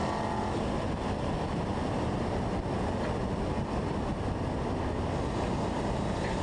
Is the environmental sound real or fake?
real